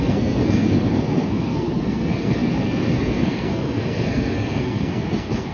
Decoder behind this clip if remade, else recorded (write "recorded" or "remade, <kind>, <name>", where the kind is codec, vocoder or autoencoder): remade, codec, SNAC